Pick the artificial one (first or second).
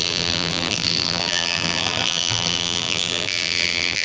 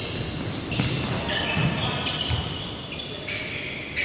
first